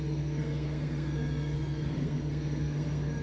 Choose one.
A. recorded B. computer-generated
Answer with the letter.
B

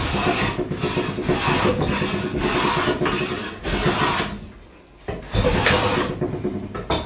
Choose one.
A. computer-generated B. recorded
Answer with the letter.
B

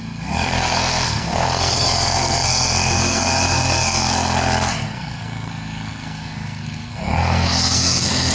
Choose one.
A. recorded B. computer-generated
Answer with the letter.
B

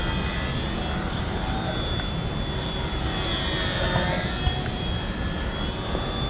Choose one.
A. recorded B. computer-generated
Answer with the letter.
A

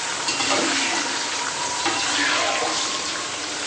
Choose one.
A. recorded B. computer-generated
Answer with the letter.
A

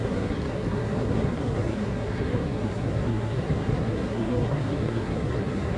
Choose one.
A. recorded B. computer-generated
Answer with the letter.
B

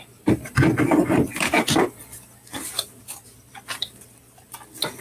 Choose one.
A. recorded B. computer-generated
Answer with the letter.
A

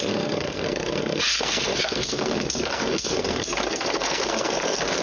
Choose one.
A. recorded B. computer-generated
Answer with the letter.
B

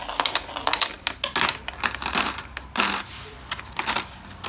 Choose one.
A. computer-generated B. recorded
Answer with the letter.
B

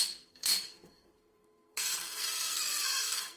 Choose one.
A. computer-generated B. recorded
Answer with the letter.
A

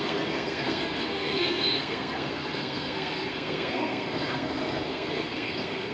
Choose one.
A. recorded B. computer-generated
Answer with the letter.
B